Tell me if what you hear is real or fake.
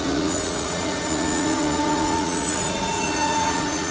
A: fake